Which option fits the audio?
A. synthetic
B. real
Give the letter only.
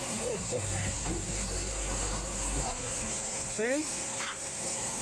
A